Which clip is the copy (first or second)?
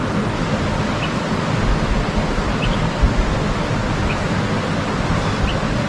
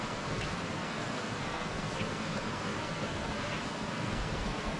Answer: second